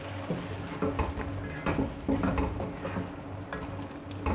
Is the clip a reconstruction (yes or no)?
no